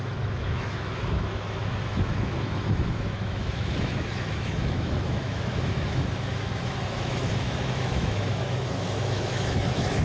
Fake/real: fake